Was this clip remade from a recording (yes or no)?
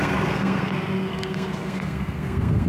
yes